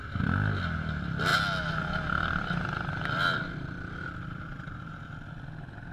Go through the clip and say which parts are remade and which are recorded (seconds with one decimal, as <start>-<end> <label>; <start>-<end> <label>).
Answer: 0.0-5.9 recorded